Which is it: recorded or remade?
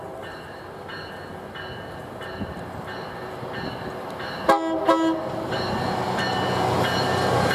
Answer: recorded